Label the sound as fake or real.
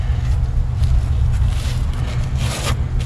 real